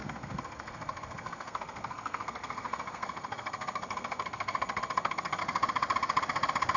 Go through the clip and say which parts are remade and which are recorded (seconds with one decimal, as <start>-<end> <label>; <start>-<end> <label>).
0.0-5.4 remade; 5.4-6.8 recorded